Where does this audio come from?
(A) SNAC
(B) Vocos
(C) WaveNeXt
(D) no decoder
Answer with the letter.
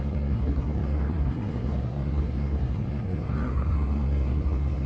A